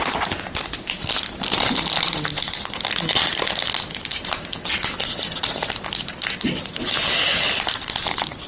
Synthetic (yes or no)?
no